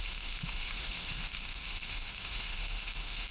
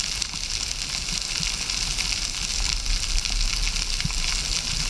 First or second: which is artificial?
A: first